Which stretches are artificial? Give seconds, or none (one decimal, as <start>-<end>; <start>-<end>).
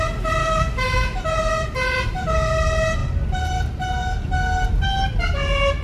0.4-1.2